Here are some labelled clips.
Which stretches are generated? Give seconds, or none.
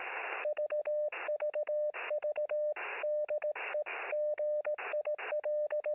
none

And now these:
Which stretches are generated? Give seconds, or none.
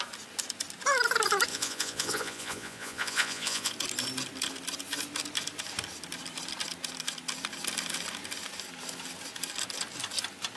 1.5-3.7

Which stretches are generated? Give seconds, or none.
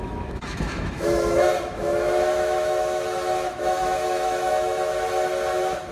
0.0-4.9; 5.5-5.9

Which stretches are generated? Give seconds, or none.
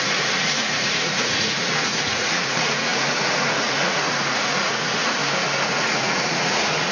0.0-5.2; 5.7-6.9